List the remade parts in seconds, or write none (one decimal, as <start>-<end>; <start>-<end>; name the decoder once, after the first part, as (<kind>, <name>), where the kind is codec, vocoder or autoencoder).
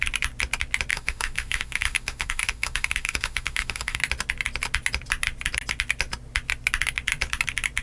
0.9-4.0 (autoencoder, DAC-VAE)